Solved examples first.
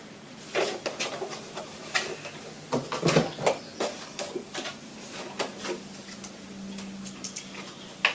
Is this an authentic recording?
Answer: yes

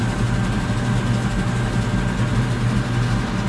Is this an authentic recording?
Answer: yes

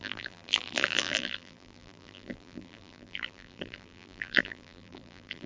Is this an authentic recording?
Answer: no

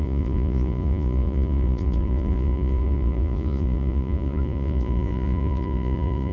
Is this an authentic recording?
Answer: no